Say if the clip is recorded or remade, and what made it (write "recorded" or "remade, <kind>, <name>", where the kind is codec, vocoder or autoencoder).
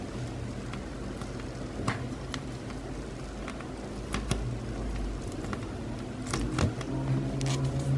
recorded